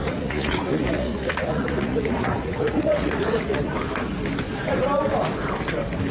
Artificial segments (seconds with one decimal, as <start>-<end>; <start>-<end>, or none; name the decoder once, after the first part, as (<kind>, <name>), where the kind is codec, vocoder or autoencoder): 0.0-3.7 (vocoder, Vocos)